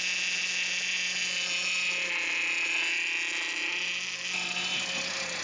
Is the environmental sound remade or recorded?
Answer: recorded